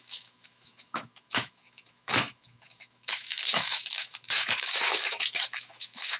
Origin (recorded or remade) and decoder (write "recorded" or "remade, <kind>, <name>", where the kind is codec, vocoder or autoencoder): remade, autoencoder, DAC-VAE